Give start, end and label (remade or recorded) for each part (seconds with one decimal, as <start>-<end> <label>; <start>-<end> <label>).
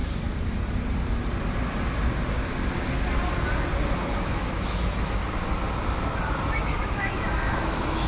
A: 0.0-4.2 recorded; 4.2-5.2 remade; 5.2-6.5 recorded; 6.5-8.1 remade